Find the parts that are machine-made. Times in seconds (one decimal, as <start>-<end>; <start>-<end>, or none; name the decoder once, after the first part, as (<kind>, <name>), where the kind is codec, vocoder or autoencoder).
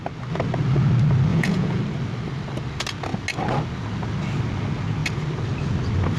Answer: 1.3-1.8 (vocoder, Vocos)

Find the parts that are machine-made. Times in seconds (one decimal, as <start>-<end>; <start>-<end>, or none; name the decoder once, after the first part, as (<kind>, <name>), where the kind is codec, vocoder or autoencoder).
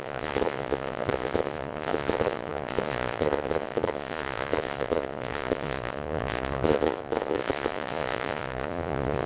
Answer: 0.0-9.3 (vocoder, Vocos)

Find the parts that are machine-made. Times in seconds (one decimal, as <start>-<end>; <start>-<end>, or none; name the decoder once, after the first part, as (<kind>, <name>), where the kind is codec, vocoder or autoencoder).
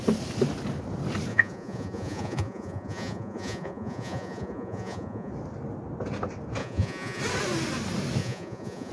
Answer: 1.3-5.3 (vocoder, Vocos); 6.6-7.2; 8.2-8.9